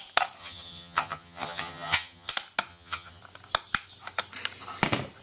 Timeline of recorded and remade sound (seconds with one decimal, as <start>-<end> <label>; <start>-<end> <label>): 0.0-0.4 recorded; 0.4-2.3 remade; 2.3-2.7 recorded; 2.7-3.2 remade; 3.2-5.2 recorded